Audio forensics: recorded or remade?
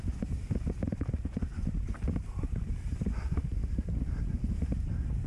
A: recorded